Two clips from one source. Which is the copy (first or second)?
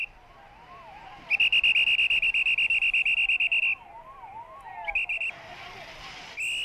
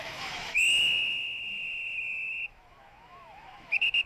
second